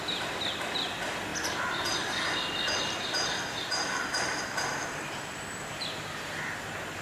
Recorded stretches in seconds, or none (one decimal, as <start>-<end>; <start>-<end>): 0.0-7.0